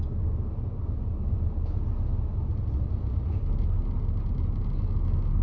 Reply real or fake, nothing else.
real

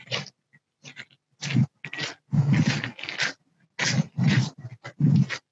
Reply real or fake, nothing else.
real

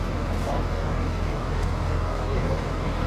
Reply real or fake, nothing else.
fake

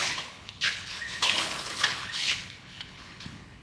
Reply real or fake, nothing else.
fake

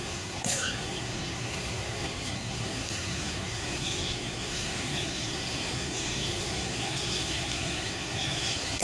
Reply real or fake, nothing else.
fake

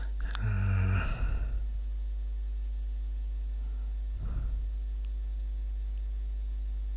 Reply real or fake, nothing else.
real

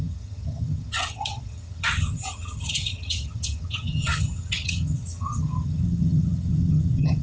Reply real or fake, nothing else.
fake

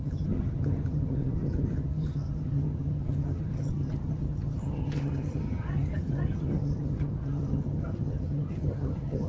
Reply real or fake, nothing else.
fake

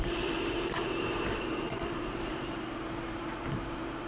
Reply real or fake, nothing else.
fake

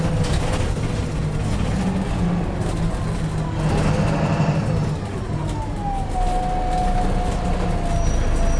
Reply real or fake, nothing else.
real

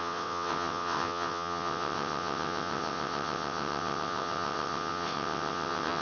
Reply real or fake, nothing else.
fake